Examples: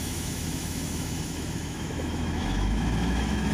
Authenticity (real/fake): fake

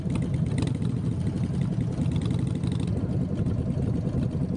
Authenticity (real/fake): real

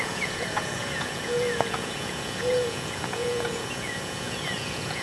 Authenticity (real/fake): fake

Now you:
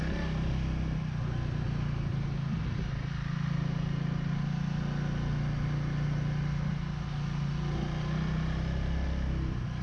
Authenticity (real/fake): real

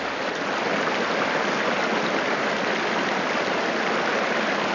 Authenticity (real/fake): real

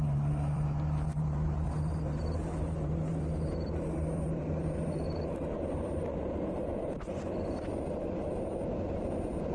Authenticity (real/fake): fake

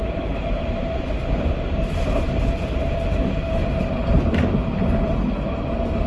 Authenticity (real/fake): fake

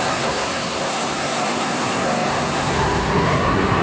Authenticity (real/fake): fake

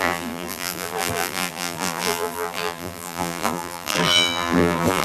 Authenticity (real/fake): fake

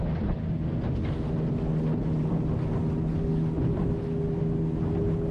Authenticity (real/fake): real